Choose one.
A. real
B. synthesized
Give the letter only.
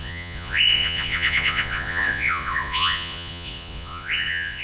B